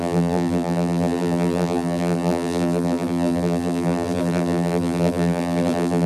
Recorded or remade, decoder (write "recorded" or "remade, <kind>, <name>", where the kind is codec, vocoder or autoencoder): remade, vocoder, BigVGAN v2